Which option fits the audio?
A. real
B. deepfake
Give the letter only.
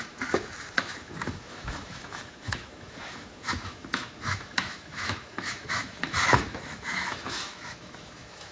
B